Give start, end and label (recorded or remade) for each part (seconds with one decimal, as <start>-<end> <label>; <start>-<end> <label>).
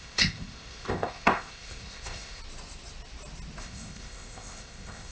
0.0-2.4 remade; 2.4-3.6 recorded; 3.6-5.1 remade